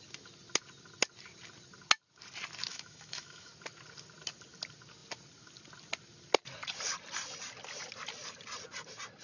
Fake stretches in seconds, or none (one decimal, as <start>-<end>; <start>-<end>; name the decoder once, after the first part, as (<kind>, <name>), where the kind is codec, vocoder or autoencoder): 2.7-3.5 (autoencoder, DAC-VAE)